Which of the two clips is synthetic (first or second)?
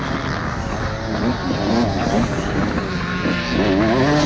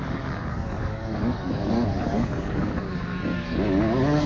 second